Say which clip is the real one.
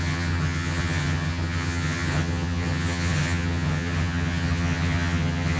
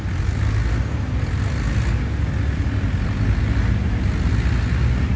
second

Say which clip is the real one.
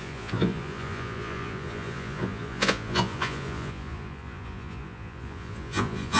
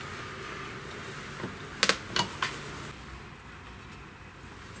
second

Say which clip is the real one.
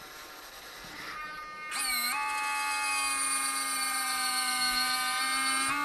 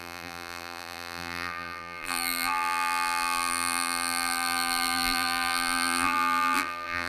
first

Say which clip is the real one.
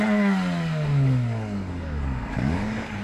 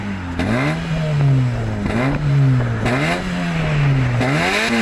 second